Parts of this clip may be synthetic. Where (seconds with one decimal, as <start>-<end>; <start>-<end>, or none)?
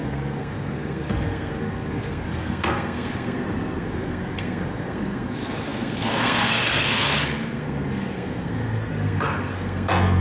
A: 0.0-10.2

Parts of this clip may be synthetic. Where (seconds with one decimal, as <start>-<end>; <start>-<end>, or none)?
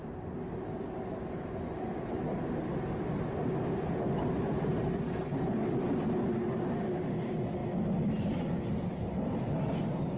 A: none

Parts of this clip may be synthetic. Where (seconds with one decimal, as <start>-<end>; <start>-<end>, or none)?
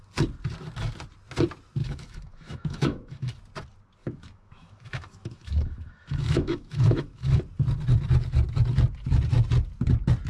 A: 1.8-3.3; 4.0-7.4